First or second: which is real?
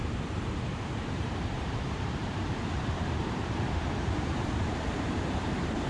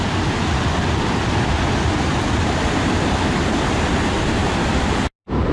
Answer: second